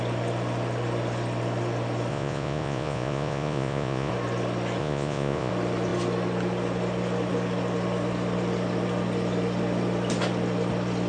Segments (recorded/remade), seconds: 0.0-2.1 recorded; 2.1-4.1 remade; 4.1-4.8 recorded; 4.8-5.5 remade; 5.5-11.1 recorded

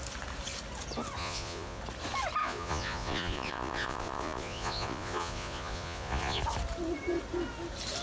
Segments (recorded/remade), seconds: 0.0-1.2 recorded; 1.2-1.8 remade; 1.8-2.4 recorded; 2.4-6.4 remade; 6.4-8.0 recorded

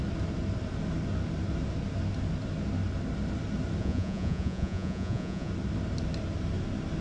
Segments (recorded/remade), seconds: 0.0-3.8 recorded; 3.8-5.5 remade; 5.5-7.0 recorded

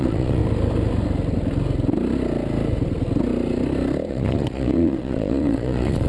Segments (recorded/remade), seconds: 0.0-0.4 remade; 0.4-4.1 recorded; 4.1-6.1 remade

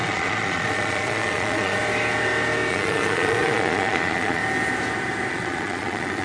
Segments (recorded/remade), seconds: 0.0-1.8 remade; 1.8-2.7 recorded; 2.7-4.4 remade; 4.4-5.3 recorded; 5.3-6.2 remade

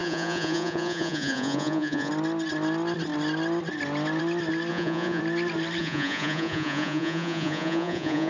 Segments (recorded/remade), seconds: 0.0-2.1 remade; 2.1-4.7 recorded; 4.7-5.2 remade; 5.2-5.8 recorded; 5.8-8.3 remade